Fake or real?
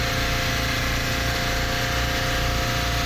real